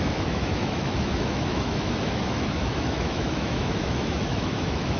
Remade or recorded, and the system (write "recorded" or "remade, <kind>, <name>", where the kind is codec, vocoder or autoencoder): remade, autoencoder, DAC-VAE